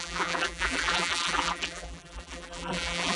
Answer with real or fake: fake